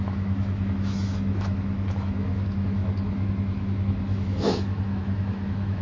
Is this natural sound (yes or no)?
no